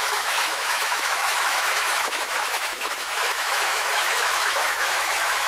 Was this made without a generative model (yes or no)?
no